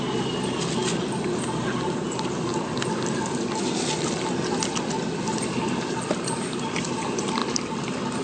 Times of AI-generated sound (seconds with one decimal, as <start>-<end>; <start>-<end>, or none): none